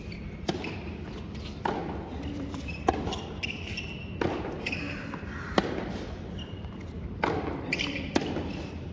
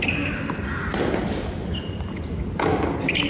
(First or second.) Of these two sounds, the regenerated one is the first